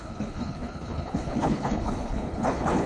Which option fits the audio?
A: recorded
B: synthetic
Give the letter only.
B